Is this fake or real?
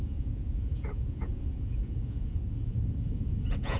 fake